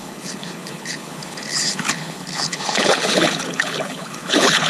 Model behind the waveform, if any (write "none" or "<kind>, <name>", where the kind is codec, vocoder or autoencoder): codec, HILCodec